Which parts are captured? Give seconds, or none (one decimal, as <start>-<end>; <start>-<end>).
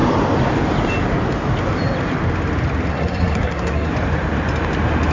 0.0-2.9; 3.9-5.1